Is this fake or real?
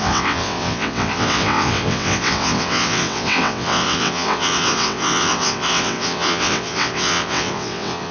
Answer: fake